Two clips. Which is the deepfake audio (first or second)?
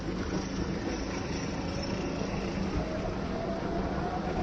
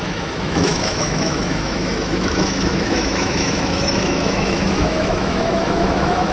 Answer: second